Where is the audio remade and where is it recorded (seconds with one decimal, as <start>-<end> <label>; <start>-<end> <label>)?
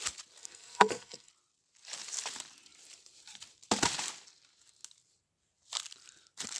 0.0-0.4 recorded; 0.4-1.3 remade; 1.3-6.6 recorded